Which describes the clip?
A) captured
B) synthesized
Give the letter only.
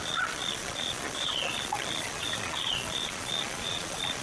B